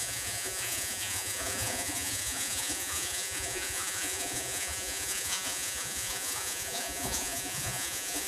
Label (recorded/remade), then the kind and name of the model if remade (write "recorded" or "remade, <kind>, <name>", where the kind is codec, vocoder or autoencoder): remade, vocoder, Vocos